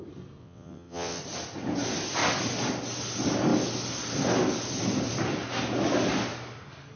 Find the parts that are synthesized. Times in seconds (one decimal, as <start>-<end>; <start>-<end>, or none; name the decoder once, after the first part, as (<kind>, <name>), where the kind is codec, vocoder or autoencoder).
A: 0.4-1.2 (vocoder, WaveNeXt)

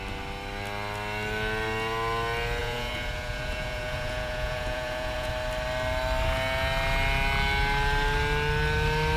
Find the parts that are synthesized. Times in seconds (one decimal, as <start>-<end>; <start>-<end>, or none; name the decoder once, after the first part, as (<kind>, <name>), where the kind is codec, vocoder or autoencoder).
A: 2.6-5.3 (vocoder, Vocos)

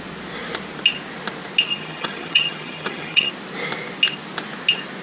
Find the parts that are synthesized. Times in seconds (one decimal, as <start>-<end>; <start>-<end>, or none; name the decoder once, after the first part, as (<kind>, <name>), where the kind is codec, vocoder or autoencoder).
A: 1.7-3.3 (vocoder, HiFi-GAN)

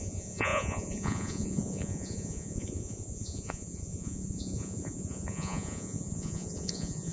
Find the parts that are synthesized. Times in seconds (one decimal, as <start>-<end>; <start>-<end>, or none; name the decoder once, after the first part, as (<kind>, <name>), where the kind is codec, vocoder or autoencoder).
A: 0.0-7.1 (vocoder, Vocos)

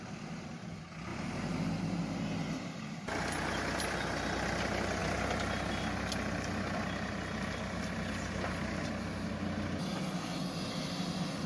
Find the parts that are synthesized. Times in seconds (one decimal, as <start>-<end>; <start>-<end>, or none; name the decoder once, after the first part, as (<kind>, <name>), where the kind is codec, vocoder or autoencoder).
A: none